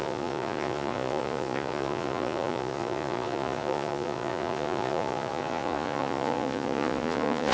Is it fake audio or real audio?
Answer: fake